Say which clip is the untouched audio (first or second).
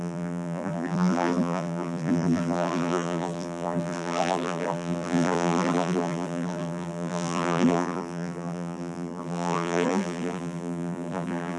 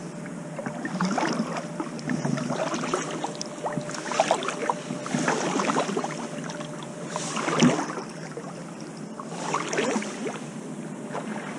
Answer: second